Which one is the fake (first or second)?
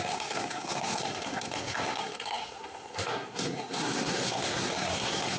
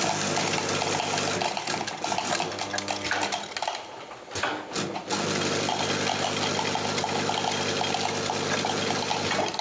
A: first